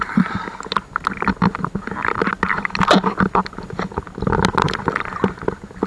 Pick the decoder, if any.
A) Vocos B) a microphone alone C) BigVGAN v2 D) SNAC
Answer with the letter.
B